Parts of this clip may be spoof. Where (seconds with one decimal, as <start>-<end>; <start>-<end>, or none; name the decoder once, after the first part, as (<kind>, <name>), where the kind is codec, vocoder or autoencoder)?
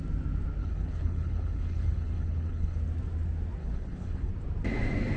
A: 0.6-2.8 (codec, HILCodec); 3.6-4.3